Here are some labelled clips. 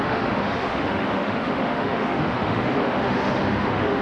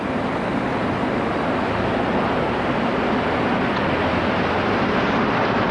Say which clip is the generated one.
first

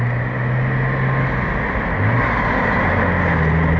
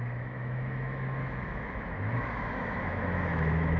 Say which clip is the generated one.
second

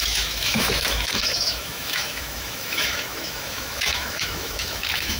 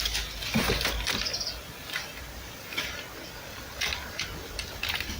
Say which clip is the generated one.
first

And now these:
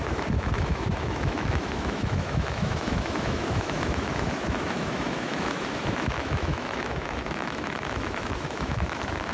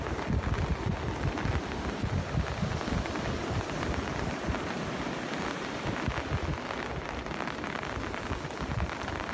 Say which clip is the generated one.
first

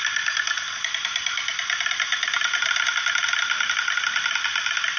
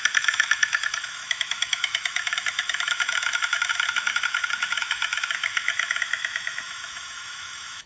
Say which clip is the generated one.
second